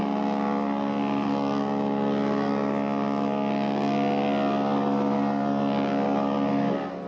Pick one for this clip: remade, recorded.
recorded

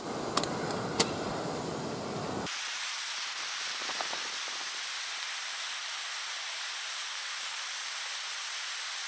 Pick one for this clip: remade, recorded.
recorded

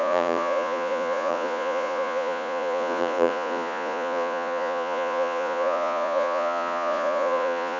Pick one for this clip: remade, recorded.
remade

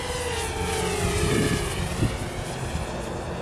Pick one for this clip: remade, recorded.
recorded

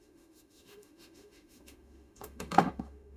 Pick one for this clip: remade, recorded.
remade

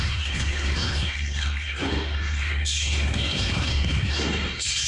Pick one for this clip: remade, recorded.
remade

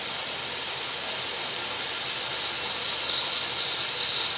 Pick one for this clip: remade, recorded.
recorded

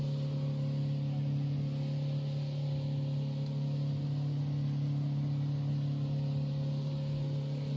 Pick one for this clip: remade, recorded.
recorded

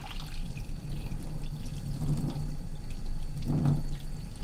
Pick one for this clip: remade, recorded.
recorded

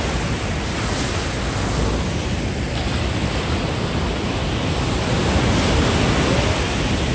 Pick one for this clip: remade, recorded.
recorded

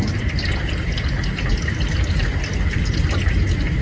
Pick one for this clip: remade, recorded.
recorded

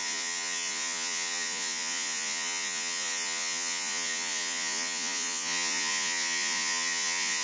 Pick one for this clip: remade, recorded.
remade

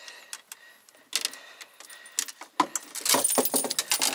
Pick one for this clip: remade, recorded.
recorded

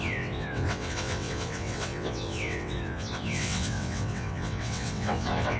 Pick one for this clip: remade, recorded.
remade